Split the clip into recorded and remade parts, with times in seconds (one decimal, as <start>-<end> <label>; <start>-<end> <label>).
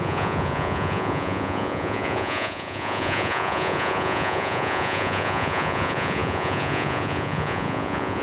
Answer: 0.0-8.2 remade